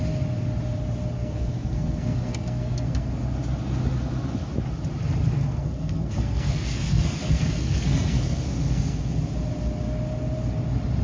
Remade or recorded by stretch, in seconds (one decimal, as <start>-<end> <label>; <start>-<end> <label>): 0.0-1.2 recorded; 1.2-3.1 remade; 3.1-5.3 recorded; 5.3-9.1 remade; 9.1-11.0 recorded